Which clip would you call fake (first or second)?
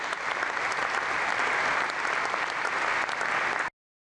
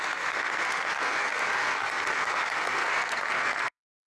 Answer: second